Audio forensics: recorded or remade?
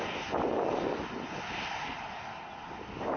recorded